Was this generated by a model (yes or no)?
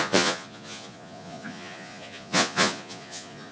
yes